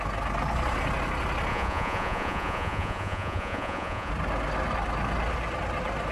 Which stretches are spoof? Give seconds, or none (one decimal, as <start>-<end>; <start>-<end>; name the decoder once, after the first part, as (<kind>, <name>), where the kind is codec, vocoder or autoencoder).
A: 1.5-4.1 (vocoder, Vocos)